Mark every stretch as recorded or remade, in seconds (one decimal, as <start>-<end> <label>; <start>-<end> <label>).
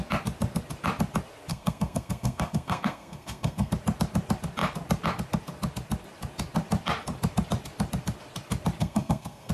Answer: 0.0-1.5 recorded; 1.5-3.7 remade; 3.7-8.8 recorded; 8.8-9.5 remade